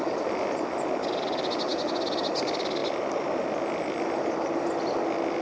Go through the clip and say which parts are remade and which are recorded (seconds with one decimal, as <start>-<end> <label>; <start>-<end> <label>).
0.0-5.4 recorded